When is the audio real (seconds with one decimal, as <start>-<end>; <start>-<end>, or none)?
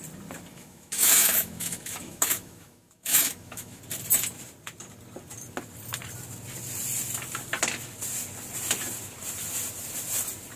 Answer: 0.0-0.5; 3.8-10.6